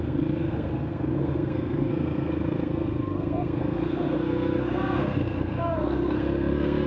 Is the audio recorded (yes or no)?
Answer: no